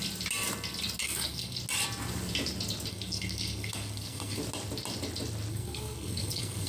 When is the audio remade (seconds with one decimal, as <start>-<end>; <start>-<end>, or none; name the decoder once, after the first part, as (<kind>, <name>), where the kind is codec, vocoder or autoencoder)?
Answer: 1.0-1.6 (codec, SNAC); 2.9-4.4; 5.5-6.7

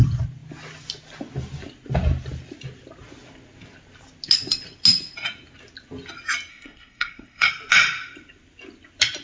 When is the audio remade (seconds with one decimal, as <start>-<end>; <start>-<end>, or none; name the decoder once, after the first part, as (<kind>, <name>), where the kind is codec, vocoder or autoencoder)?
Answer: 6.5-7.5 (codec, SNAC)

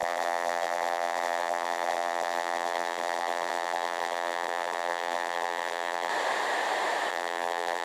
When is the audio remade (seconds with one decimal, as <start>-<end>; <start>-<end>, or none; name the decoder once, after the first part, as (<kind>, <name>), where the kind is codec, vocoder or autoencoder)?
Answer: 0.0-6.1 (vocoder, BigVGAN v2); 7.1-7.8

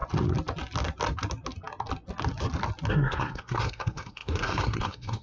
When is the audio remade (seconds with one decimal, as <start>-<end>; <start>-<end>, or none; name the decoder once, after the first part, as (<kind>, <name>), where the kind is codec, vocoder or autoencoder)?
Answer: 2.9-5.2 (codec, SNAC)